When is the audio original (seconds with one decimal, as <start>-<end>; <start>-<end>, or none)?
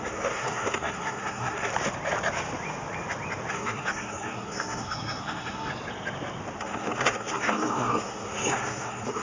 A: 1.7-3.5; 5.7-6.6